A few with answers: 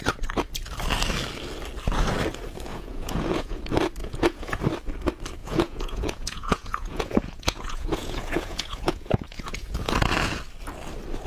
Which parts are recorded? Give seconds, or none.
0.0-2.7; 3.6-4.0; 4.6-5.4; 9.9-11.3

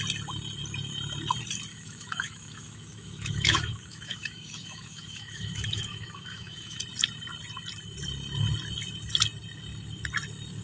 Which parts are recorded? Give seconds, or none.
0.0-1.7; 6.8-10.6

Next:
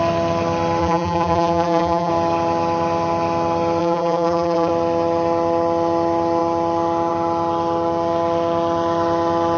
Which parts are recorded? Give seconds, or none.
0.0-0.8; 2.1-3.8; 4.7-9.6

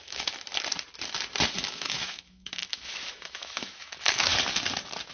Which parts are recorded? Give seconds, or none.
0.5-1.5; 4.3-5.1

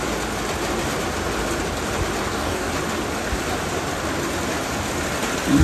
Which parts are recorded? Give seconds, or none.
0.0-2.2; 2.7-5.6

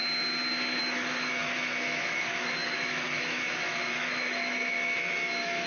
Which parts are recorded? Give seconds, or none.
0.0-0.8

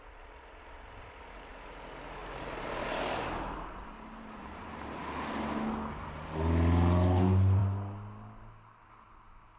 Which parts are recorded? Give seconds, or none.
0.0-2.2; 5.0-9.6